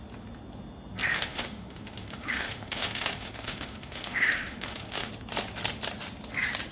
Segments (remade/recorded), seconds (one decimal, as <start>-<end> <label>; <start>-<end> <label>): 0.0-1.1 recorded; 1.1-5.1 remade; 5.1-6.7 recorded